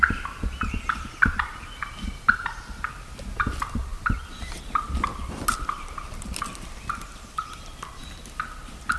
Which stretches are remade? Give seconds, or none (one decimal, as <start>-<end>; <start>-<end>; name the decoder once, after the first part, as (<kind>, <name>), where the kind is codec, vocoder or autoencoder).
none